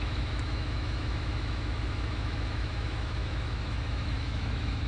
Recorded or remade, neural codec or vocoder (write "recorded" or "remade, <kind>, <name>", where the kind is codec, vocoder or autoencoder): remade, autoencoder, DAC-VAE